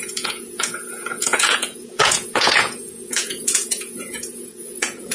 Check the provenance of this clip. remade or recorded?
remade